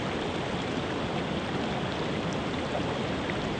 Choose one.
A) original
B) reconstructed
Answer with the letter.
A